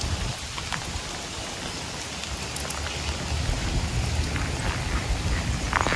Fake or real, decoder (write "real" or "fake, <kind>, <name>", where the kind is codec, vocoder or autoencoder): real